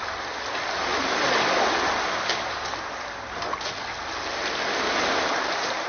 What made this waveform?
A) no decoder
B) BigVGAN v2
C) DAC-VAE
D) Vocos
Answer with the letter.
A